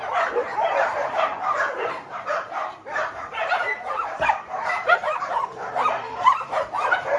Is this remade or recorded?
remade